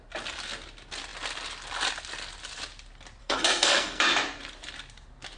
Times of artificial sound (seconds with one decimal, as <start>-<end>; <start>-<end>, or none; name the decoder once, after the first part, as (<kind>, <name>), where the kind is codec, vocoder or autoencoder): 3.2-4.0 (codec, SNAC)